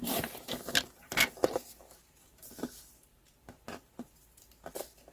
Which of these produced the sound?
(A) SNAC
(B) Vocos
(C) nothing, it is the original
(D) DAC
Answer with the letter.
C